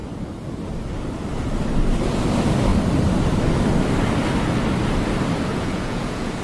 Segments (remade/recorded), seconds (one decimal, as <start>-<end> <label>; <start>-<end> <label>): 0.0-5.5 recorded; 5.5-6.4 remade